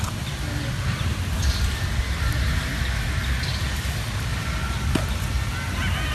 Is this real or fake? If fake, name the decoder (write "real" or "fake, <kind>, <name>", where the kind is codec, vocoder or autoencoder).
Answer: real